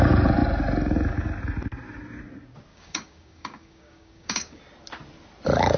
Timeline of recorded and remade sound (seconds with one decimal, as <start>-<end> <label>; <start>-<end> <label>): 0.0-2.7 recorded; 2.7-4.6 remade; 4.6-5.8 recorded